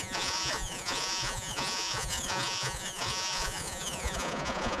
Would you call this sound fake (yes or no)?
yes